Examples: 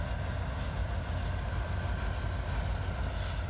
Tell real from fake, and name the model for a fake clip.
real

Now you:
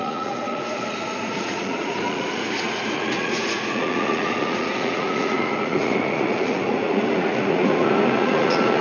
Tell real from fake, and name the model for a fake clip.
fake, vocoder, Vocos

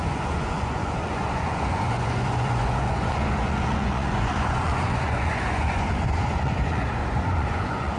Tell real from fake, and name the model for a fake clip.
fake, vocoder, Vocos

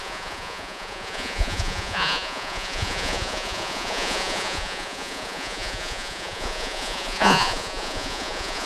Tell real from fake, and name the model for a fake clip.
fake, vocoder, Vocos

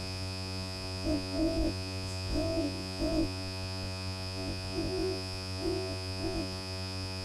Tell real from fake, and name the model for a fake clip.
fake, vocoder, Vocos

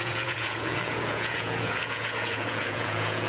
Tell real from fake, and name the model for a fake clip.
fake, vocoder, Vocos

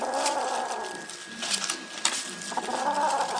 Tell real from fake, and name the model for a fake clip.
real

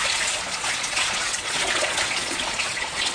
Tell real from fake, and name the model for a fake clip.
fake, vocoder, Vocos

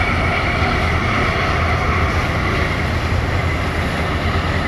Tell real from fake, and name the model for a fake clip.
real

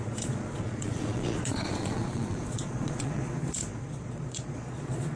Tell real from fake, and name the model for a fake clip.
fake, vocoder, Vocos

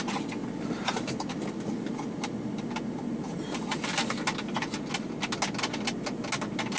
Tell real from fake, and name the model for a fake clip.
real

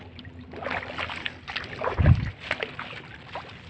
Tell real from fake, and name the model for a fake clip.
real